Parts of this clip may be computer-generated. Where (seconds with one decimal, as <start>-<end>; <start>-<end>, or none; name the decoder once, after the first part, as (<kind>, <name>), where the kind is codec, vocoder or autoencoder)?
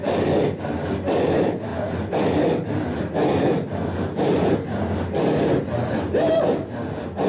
none